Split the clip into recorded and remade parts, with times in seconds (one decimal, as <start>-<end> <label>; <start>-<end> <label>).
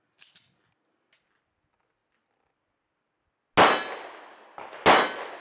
0.0-5.4 recorded